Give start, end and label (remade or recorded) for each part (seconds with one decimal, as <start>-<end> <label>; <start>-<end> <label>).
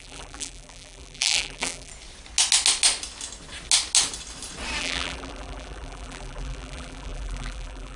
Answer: 0.0-1.9 remade; 1.9-4.8 recorded; 4.8-8.0 remade